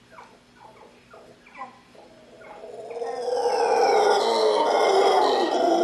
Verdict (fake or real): real